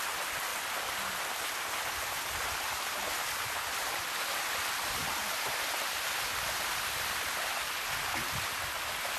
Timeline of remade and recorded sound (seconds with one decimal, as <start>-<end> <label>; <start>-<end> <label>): 0.0-9.2 recorded

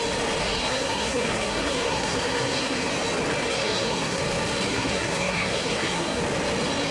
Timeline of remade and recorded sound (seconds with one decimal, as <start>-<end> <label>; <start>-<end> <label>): 0.0-0.4 recorded; 0.4-2.9 remade; 2.9-3.4 recorded; 3.4-4.2 remade; 4.2-4.7 recorded; 4.7-6.2 remade; 6.2-6.9 recorded

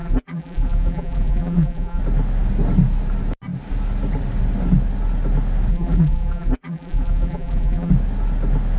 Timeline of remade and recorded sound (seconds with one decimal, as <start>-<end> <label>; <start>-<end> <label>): 0.0-2.0 remade; 2.0-5.7 recorded; 5.7-7.9 remade; 7.9-8.8 recorded

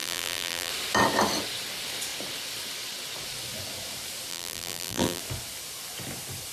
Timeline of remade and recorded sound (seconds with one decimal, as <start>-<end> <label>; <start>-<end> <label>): 0.0-0.7 remade; 0.7-4.3 recorded; 4.3-5.2 remade; 5.2-6.5 recorded

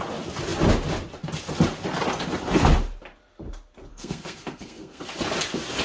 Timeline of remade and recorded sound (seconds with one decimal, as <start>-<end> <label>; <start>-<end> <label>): 0.0-3.9 recorded; 3.9-5.0 remade; 5.0-5.8 recorded